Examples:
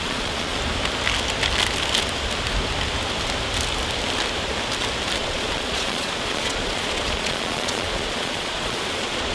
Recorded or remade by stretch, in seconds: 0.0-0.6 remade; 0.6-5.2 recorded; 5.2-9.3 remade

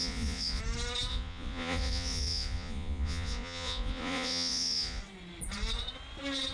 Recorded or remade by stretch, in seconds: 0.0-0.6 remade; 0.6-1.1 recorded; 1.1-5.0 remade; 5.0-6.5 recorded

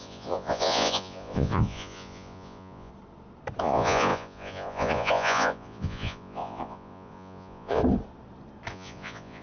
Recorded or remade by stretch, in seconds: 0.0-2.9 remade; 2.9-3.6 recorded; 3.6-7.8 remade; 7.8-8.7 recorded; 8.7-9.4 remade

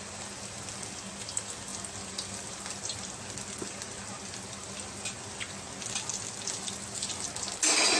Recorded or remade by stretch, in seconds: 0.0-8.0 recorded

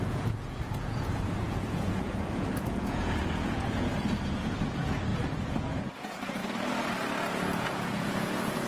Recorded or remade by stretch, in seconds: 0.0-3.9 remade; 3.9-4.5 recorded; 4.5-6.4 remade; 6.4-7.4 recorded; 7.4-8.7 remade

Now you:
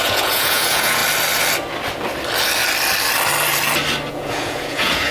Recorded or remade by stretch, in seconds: 0.0-1.0 remade; 1.0-4.1 recorded; 4.1-5.1 remade